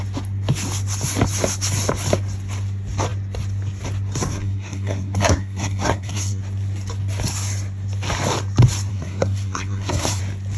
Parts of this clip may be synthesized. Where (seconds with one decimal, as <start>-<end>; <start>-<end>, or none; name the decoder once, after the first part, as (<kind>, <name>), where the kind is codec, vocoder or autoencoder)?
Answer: 4.3-6.4 (codec, SNAC); 8.9-10.2